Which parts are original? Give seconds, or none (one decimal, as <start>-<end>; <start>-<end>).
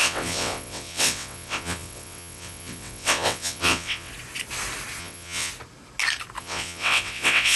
4.1-5.0; 5.5-6.4